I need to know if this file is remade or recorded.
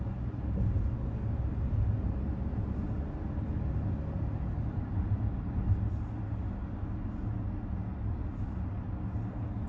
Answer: recorded